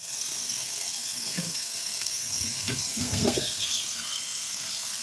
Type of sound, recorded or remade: remade